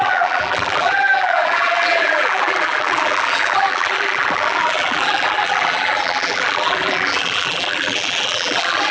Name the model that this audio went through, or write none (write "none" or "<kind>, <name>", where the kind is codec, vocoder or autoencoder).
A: vocoder, BigVGAN v2